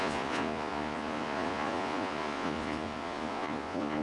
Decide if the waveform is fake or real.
fake